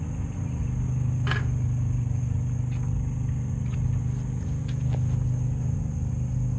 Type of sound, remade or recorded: recorded